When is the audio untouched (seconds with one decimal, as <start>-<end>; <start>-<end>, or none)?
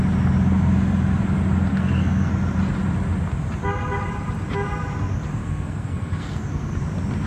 0.0-1.7; 2.3-5.4; 6.8-7.3